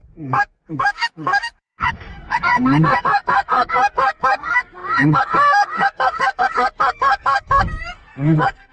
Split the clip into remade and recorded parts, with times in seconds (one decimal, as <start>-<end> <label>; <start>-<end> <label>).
0.0-8.7 remade